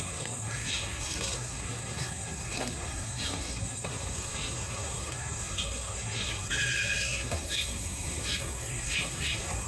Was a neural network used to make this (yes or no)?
yes